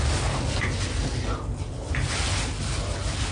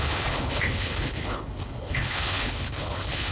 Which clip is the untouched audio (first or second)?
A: first